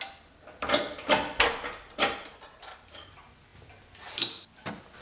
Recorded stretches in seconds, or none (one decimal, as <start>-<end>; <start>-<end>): 0.0-5.0